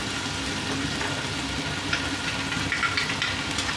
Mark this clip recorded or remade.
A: recorded